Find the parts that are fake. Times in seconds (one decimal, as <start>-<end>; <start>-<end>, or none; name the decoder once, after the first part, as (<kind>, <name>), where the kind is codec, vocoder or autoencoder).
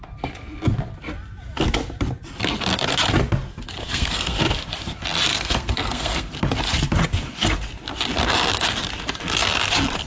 3.8-4.4 (codec, SNAC); 5.3-6.3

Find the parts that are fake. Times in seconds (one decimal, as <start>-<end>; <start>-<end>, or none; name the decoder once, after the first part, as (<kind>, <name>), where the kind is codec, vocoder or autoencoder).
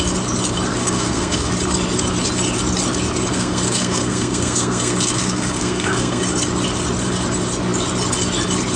0.8-1.5 (codec, SNAC); 3.3-6.2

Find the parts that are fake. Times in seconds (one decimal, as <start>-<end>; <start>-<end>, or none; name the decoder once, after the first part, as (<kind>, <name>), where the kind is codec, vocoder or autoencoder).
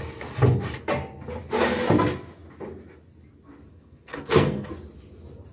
3.7-4.7 (codec, SNAC)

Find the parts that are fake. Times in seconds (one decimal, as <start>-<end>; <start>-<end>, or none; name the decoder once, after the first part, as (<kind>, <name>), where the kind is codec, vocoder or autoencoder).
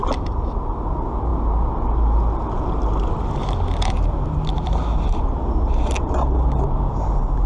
none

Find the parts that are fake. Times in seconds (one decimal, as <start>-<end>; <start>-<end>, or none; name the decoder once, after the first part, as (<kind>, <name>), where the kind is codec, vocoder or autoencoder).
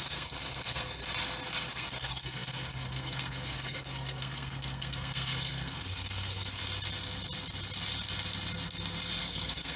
0.0-1.0 (codec, SNAC); 1.7-6.6; 9.2-9.8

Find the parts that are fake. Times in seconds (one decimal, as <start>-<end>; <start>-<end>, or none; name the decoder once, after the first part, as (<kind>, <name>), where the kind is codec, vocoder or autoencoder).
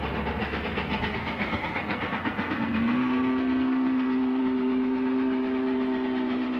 0.4-4.4 (codec, SNAC)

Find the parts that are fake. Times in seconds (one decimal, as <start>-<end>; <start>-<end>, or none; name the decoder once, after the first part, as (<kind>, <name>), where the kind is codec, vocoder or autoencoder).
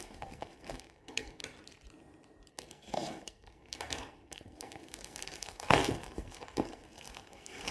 0.0-1.4 (codec, SNAC); 2.5-7.7